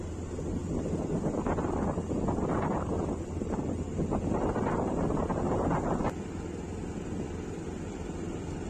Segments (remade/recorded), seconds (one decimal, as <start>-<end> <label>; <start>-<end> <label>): 0.0-8.7 recorded